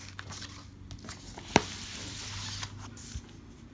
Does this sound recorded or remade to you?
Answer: recorded